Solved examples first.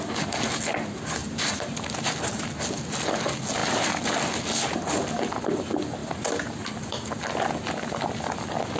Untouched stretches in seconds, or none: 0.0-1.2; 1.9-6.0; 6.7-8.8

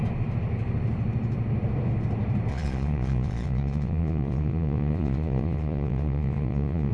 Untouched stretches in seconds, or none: 0.0-2.5

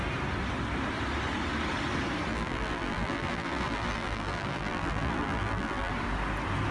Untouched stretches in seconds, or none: 0.0-2.3; 5.9-6.7

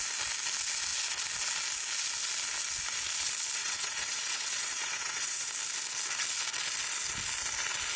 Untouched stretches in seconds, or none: 0.0-3.6; 5.5-8.0

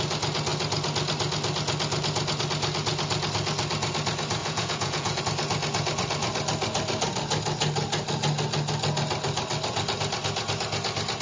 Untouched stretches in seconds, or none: 0.0-4.4; 5.2-11.2

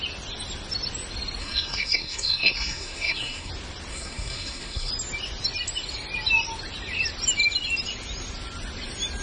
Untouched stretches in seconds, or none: 0.0-1.4; 3.5-3.9; 4.9-9.2